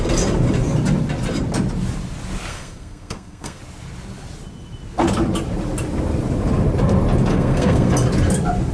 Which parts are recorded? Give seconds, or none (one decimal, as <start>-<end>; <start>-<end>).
0.0-2.5; 3.6-7.3; 7.9-8.7